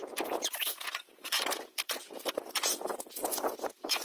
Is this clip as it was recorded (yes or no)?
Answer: no